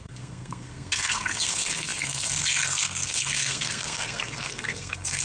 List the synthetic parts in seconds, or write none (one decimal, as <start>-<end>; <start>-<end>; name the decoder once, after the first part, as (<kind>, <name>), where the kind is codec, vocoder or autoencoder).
0.0-5.2 (codec, SNAC)